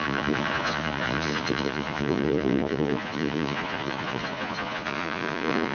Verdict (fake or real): fake